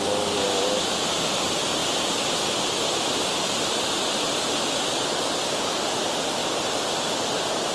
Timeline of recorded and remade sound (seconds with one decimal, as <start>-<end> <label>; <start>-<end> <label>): 0.0-7.7 recorded